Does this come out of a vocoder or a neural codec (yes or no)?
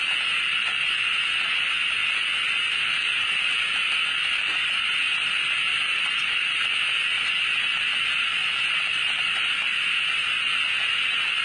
no